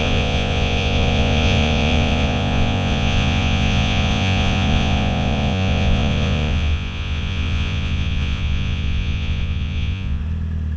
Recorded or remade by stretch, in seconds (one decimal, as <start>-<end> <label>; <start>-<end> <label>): 0.0-10.2 remade; 10.2-10.8 recorded